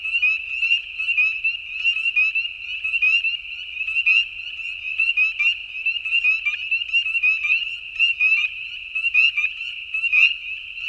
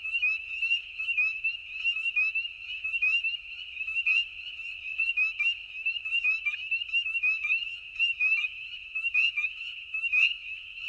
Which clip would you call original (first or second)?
first